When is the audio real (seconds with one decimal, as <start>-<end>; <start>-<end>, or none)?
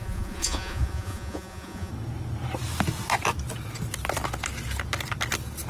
1.9-5.7